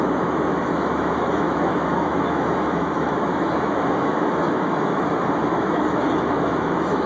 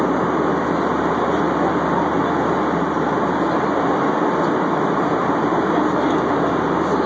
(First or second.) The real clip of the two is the second